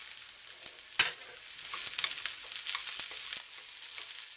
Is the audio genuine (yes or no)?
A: yes